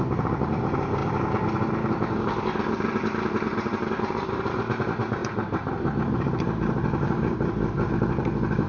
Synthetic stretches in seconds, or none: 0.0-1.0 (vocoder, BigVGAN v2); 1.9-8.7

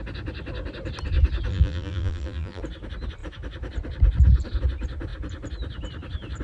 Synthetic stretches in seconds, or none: 1.5-2.6 (vocoder, BigVGAN v2)